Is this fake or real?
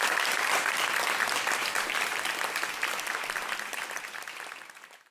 fake